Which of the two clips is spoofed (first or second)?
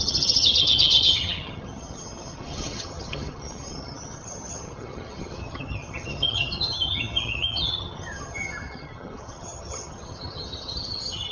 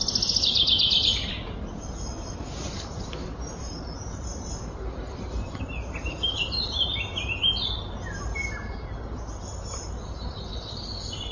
first